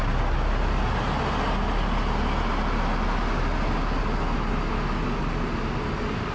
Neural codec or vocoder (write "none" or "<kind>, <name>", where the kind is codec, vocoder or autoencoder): none